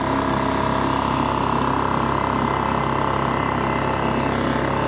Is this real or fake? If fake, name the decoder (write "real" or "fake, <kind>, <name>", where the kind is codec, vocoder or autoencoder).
real